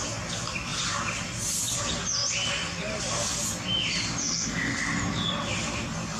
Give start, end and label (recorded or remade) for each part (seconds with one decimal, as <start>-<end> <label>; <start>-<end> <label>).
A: 0.0-4.2 recorded; 4.2-4.8 remade; 4.8-6.2 recorded